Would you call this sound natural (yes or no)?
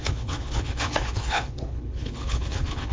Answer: no